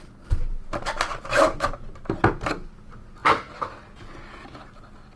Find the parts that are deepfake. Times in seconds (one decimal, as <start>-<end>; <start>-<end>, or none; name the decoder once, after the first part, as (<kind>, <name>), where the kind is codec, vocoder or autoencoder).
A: none